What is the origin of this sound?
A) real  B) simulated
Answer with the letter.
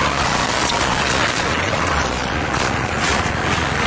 B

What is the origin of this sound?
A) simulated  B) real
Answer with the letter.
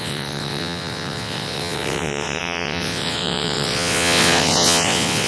A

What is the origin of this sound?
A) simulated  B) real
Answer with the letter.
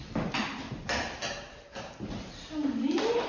B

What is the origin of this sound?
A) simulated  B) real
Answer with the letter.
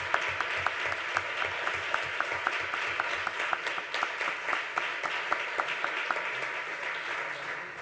B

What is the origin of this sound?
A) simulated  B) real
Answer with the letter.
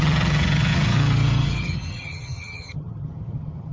A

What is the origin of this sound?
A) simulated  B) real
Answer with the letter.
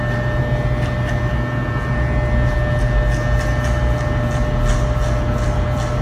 B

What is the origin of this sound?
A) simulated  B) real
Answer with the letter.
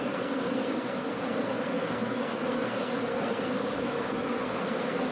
A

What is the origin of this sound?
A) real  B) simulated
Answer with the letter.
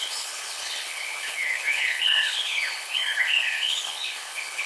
B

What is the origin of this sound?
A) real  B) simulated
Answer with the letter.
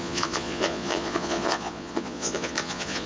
B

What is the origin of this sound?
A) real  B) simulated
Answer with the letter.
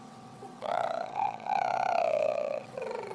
B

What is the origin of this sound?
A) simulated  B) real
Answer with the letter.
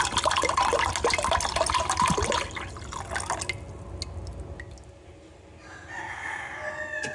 B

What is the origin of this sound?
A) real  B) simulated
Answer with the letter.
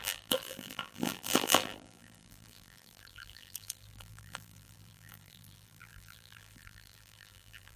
B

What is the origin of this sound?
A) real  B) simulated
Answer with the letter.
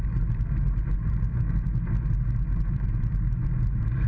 A